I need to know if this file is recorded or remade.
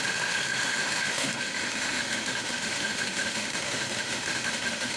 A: remade